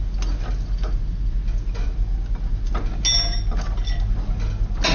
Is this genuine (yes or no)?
yes